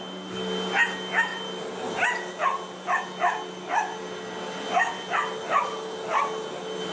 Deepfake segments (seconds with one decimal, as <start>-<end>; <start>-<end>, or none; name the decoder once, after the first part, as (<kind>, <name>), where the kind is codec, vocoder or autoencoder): none